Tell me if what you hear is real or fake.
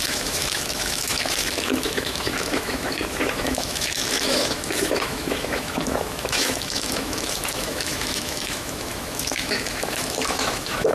fake